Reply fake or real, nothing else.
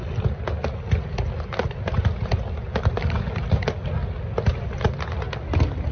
real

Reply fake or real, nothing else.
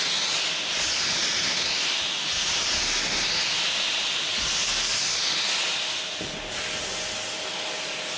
real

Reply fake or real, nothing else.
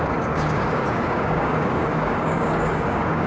fake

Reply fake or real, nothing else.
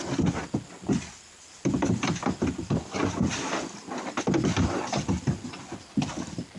real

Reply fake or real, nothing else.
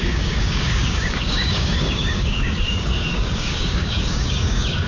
fake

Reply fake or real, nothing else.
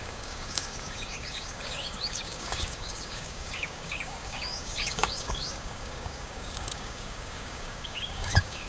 fake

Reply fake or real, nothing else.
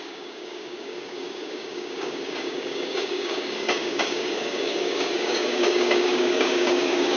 fake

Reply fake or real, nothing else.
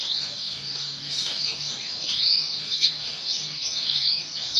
fake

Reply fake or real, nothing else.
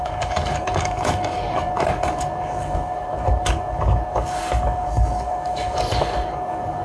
fake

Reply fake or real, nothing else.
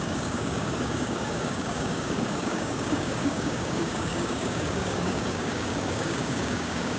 fake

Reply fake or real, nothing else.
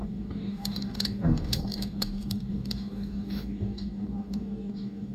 fake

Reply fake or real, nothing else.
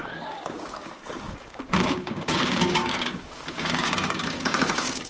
fake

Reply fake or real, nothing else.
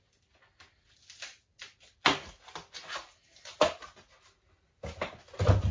real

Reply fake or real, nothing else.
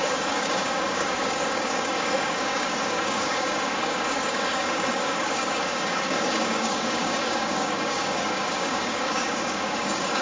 fake